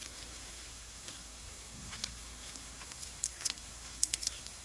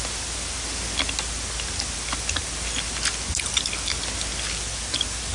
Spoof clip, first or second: first